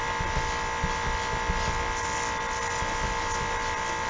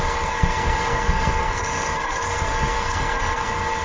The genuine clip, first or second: first